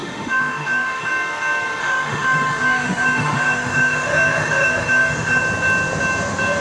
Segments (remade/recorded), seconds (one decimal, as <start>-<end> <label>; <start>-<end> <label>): 0.0-1.1 remade; 1.1-1.8 recorded; 1.8-5.4 remade; 5.4-6.6 recorded